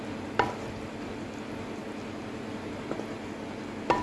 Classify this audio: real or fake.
real